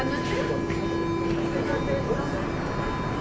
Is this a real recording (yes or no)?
yes